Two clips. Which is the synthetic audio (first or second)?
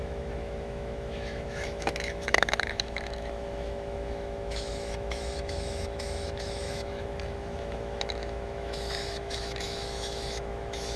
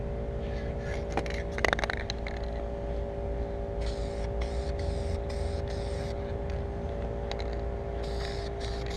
first